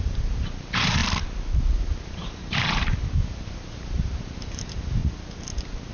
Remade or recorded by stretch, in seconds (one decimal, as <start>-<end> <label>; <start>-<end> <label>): 0.0-1.0 remade; 1.0-1.8 recorded; 1.8-5.0 remade; 5.0-5.9 recorded